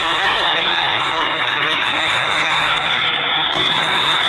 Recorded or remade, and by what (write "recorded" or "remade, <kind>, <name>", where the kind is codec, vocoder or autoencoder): remade, codec, SNAC